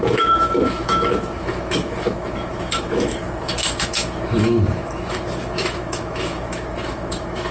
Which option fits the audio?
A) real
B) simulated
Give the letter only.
B